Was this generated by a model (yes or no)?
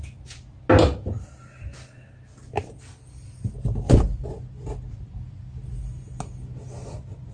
no